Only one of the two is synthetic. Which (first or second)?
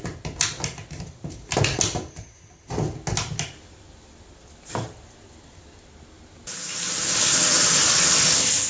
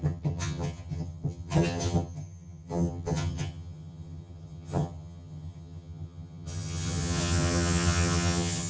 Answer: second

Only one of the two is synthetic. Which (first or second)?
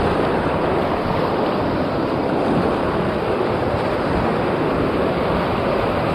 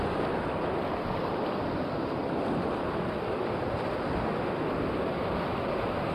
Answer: first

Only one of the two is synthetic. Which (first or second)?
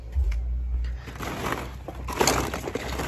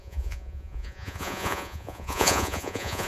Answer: second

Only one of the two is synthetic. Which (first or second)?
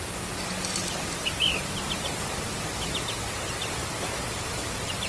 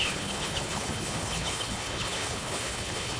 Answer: second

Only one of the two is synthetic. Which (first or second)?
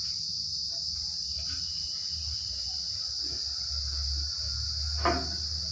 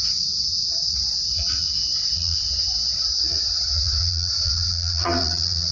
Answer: second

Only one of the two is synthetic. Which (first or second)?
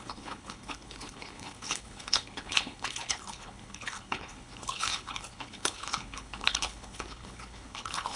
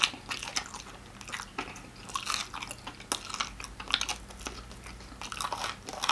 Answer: first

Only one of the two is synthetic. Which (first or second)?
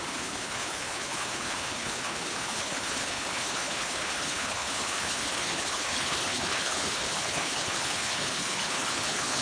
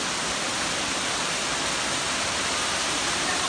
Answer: first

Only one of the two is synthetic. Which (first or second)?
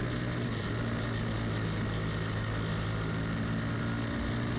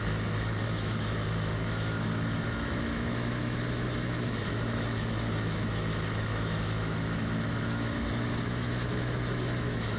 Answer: second